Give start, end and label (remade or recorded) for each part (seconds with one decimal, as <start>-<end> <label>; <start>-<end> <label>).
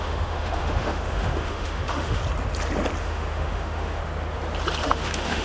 0.0-2.2 remade; 2.2-3.0 recorded; 3.0-4.0 remade; 4.0-4.8 recorded; 4.8-5.4 remade